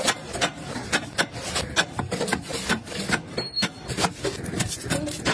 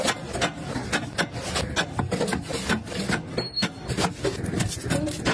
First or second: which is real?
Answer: second